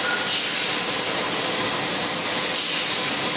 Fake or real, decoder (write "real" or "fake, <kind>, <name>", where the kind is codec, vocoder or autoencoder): real